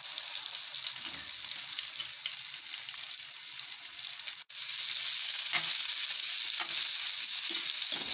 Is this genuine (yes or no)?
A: yes